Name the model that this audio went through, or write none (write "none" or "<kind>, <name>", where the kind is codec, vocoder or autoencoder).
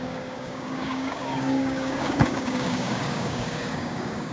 codec, DAC